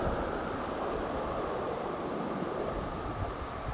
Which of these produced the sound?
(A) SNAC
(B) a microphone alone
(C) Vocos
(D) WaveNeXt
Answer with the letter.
B